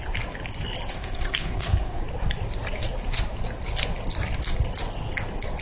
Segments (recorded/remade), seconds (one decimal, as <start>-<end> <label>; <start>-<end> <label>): 0.0-0.9 recorded; 0.9-2.0 remade; 2.0-5.6 recorded